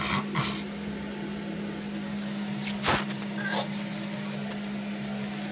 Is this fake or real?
real